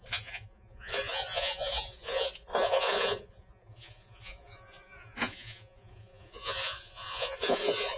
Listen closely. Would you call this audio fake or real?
fake